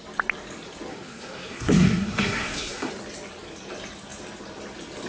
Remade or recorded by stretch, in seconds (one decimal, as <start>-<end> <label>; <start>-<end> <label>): 0.0-0.9 recorded; 0.9-2.9 remade; 2.9-5.1 recorded